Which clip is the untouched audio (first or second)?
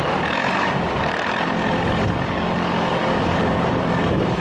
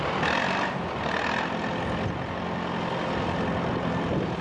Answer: second